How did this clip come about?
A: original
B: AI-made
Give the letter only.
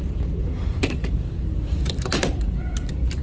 A